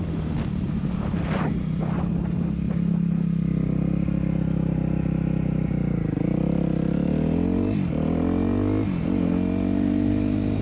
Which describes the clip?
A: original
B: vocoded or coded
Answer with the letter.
A